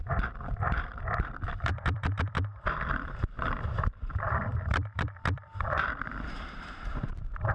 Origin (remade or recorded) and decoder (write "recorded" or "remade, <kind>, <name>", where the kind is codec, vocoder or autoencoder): remade, vocoder, BigVGAN v2